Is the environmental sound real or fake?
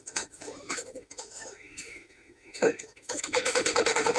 fake